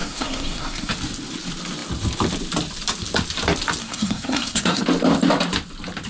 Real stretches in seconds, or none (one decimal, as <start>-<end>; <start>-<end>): 0.9-3.8; 4.8-6.1